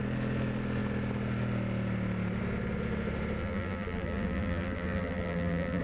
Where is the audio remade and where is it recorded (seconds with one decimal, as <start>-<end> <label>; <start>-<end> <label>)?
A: 0.0-3.4 recorded; 3.4-5.8 remade